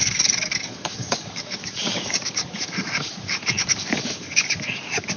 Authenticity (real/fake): fake